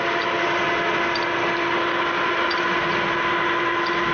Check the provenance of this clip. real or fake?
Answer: real